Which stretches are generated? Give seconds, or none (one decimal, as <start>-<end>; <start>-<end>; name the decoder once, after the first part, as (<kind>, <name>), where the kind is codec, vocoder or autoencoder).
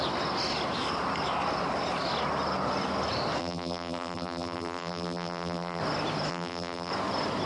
3.4-5.8 (vocoder, BigVGAN v2); 6.3-6.9